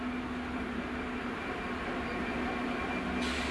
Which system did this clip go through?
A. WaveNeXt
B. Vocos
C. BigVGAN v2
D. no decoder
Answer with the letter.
D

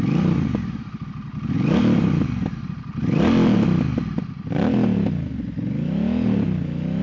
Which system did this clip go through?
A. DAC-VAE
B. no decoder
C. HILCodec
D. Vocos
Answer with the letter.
B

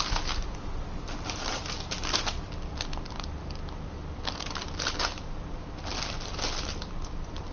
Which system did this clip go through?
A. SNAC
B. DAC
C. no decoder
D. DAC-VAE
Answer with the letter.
C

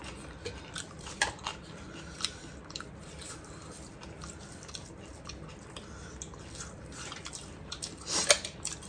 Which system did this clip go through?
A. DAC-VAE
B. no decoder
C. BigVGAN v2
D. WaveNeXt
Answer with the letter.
C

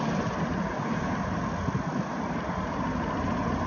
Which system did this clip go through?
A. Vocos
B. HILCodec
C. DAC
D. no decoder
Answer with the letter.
D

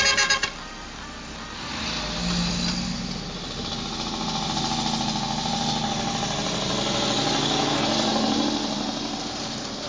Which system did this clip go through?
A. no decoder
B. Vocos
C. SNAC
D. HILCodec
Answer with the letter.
A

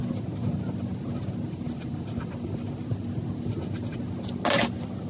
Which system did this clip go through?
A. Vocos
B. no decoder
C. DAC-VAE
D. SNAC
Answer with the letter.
B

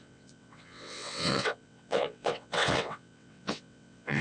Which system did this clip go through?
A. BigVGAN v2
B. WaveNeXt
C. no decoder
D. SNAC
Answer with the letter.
B